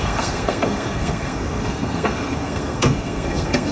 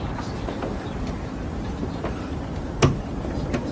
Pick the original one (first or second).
second